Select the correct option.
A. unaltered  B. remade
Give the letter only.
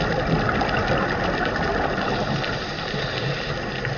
A